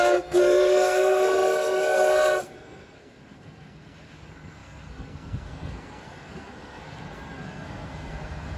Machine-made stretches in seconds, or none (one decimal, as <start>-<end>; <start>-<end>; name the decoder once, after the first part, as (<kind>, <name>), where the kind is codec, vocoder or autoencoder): 0.0-8.6 (codec, SNAC)